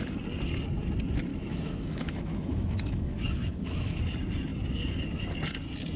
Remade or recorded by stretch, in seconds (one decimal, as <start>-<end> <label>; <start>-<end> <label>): 0.0-1.3 recorded; 1.3-4.0 remade; 4.0-6.0 recorded